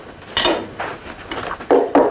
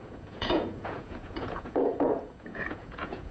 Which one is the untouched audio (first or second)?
first